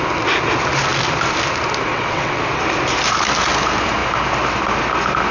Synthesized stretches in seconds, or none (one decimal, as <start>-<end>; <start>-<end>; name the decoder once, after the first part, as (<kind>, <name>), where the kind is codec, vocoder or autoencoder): 1.9-2.4 (vocoder, WaveNeXt)